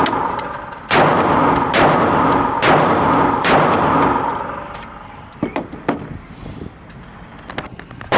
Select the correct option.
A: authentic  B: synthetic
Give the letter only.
A